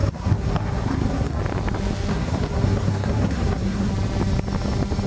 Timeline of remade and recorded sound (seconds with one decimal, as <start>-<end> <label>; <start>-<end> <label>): 0.0-1.4 remade; 1.4-2.1 recorded; 2.1-3.9 remade; 3.9-5.1 recorded